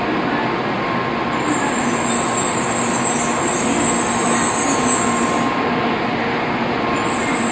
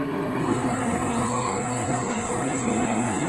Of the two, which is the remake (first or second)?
second